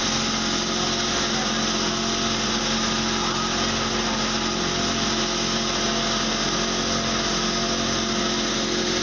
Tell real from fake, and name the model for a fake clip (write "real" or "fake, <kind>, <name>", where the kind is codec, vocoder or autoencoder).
real